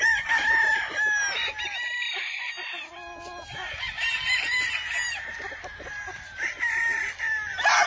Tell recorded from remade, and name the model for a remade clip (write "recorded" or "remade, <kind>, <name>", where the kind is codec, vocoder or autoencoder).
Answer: recorded